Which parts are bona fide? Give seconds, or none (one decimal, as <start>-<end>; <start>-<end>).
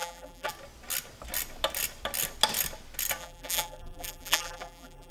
0.5-3.2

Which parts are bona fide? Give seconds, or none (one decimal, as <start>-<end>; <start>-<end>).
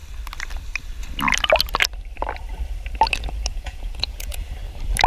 0.0-3.5; 4.4-5.1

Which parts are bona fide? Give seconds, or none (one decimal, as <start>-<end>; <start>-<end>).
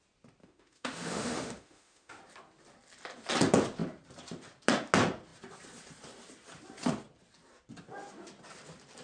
0.0-0.4; 2.2-9.0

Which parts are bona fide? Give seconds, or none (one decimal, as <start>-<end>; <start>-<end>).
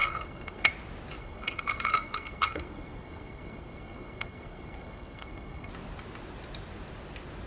0.7-1.2; 5.7-7.5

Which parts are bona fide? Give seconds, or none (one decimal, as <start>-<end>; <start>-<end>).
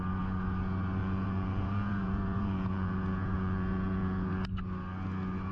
0.0-1.0; 4.3-5.5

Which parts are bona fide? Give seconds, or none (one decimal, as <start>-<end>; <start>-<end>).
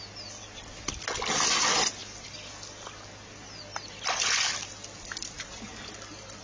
0.0-6.4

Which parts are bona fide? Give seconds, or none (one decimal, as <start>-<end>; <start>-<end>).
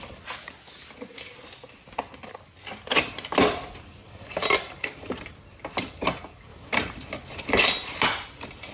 0.0-4.0; 5.2-8.7